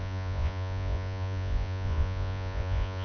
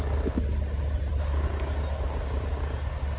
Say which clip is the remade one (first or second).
first